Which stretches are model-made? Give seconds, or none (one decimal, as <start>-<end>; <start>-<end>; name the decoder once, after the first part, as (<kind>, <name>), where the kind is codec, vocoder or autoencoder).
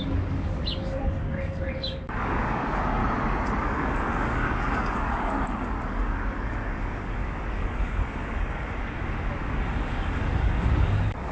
0.0-3.0 (codec, DAC); 3.6-11.3